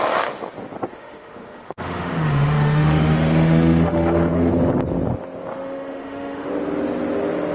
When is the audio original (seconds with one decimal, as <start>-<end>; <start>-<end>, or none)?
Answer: 0.0-0.9; 4.5-5.5; 6.5-7.5